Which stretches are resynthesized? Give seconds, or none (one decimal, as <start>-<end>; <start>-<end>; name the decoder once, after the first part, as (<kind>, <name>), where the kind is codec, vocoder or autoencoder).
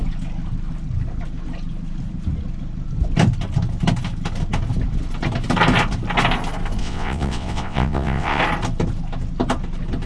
6.8-8.4 (vocoder, WaveNeXt)